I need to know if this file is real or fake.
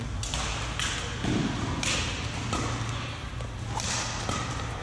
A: real